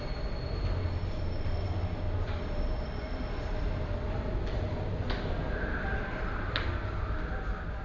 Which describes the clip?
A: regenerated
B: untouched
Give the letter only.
B